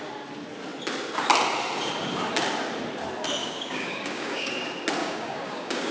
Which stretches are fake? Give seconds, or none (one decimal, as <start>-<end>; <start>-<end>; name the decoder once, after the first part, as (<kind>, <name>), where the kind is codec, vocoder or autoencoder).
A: 3.4-4.5 (codec, DAC); 5.0-5.9